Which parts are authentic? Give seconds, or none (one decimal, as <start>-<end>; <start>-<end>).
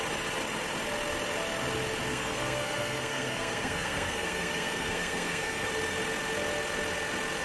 0.0-2.1; 5.7-7.4